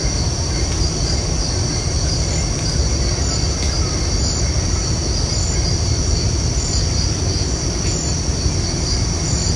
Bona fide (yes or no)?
yes